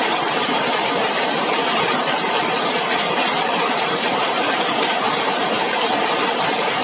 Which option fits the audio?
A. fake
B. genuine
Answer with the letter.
A